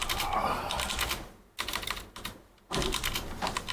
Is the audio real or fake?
real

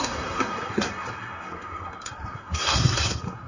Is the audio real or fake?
fake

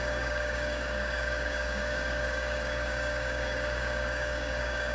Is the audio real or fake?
fake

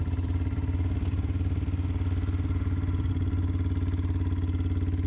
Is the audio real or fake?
real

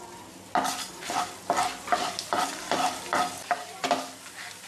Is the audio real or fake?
real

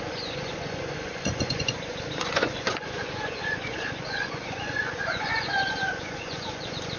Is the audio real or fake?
fake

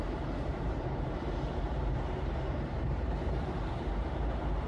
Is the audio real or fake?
fake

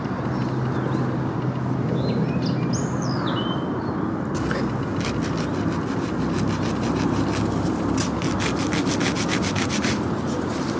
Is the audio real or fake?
real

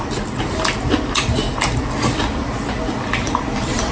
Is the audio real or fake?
fake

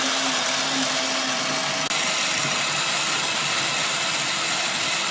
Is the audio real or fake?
real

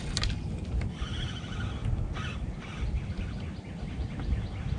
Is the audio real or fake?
real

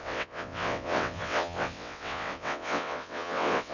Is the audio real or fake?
fake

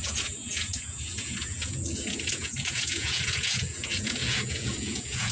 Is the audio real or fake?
fake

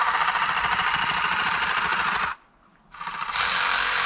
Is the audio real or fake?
real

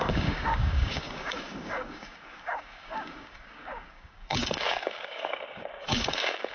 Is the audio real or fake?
fake